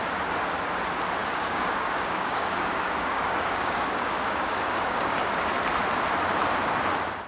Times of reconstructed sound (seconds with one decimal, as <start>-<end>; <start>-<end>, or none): 1.2-5.5